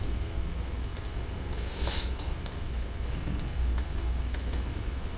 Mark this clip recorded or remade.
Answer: remade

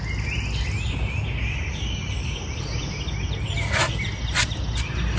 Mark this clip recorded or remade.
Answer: recorded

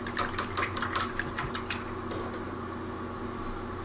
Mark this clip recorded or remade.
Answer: recorded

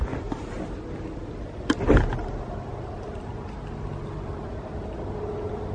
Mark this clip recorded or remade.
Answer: recorded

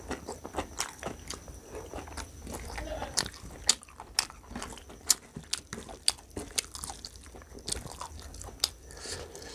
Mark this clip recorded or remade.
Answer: recorded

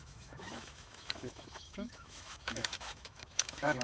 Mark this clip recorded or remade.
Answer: remade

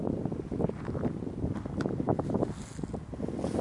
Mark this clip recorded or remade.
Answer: recorded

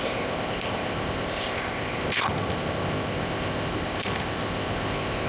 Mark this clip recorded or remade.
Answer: remade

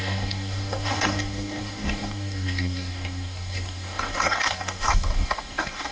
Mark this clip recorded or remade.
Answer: remade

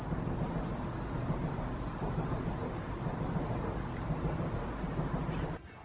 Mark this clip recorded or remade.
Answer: recorded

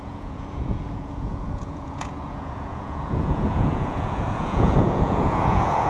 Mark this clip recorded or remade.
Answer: remade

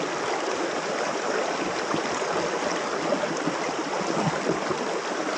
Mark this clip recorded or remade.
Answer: recorded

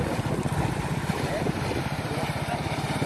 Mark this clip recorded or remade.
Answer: remade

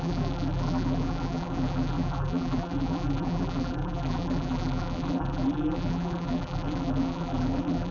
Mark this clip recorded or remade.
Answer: remade